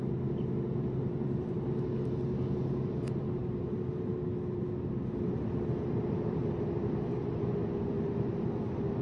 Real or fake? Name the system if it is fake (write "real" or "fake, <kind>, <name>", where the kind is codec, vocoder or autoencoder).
real